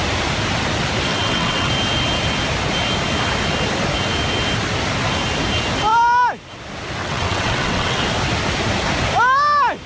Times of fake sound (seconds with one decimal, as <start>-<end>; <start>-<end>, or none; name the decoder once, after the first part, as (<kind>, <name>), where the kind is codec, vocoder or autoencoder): 1.1-1.7 (vocoder, WaveNeXt); 7.0-8.0